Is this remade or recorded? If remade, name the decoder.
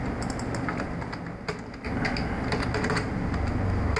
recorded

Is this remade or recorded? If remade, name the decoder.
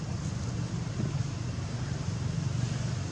recorded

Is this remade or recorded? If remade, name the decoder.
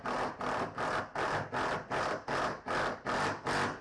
recorded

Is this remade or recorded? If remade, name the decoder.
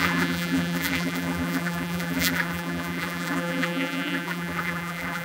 remade, vocoder, BigVGAN v2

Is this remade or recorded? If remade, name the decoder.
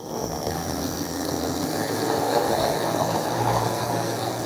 remade, codec, SNAC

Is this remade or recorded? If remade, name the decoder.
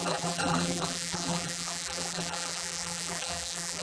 remade, vocoder, BigVGAN v2